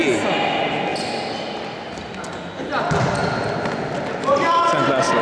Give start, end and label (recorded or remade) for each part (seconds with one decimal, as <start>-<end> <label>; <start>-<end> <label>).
0.0-3.2 recorded; 3.2-4.7 remade; 4.7-5.2 recorded